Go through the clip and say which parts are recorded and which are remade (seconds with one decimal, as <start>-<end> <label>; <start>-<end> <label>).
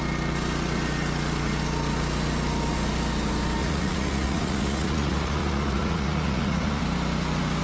0.0-3.6 recorded; 3.6-6.8 remade; 6.8-7.6 recorded